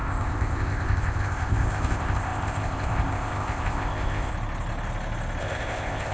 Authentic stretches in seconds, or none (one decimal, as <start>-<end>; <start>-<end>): 4.3-5.4